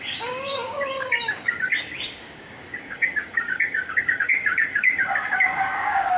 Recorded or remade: remade